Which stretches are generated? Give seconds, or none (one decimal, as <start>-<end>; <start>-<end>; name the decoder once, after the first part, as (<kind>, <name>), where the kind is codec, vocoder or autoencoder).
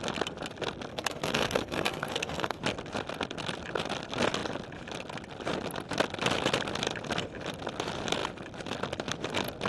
0.9-2.6 (codec, SNAC)